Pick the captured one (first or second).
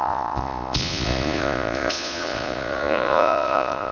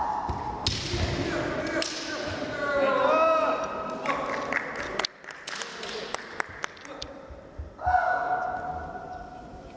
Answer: second